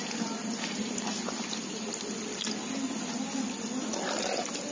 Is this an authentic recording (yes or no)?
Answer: yes